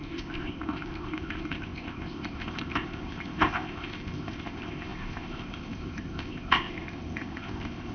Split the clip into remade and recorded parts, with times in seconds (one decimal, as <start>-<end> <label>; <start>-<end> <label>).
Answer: 0.0-7.9 remade